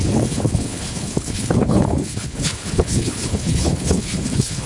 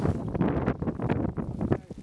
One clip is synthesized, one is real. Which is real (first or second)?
second